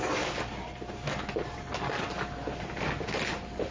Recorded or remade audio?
recorded